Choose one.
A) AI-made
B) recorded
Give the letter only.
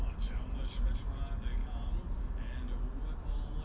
B